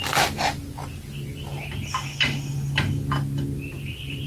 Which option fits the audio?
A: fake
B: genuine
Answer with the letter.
B